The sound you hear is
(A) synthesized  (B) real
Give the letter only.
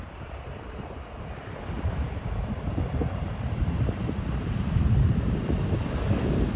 A